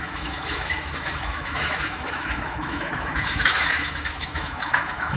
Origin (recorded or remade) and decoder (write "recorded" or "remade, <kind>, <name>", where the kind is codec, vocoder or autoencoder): remade, autoencoder, DAC-VAE